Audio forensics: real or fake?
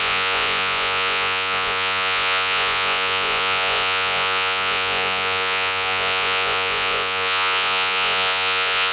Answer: fake